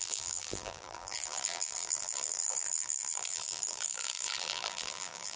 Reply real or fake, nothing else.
fake